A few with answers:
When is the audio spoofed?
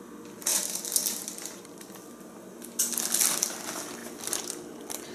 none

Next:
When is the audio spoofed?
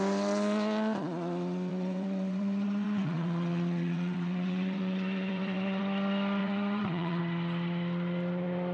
1.7-5.8 (vocoder, WaveNeXt); 6.4-7.2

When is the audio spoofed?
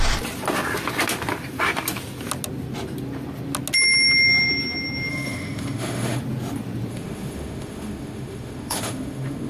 5.1-6.2 (autoencoder, DAC-VAE); 6.9-9.5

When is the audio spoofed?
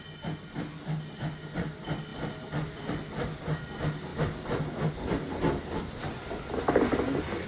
none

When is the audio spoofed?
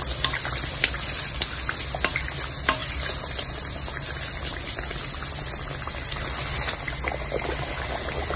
none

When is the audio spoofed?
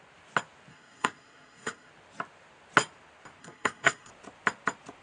0.7-1.9 (codec, SNAC); 3.4-4.1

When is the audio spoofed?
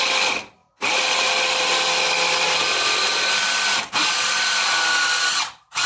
none